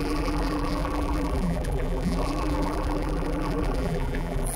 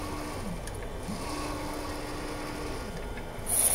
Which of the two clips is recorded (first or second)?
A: second